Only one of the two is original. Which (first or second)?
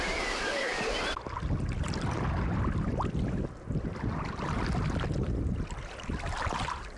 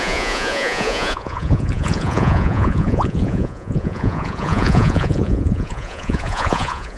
first